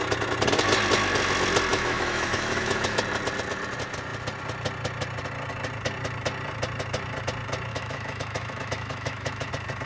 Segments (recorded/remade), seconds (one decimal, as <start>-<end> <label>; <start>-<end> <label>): 0.0-1.7 recorded; 1.7-3.0 remade; 3.0-7.7 recorded; 7.7-9.5 remade; 9.5-9.9 recorded